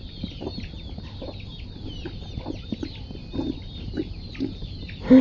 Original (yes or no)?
yes